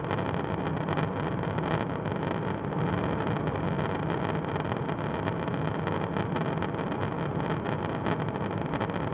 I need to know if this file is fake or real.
real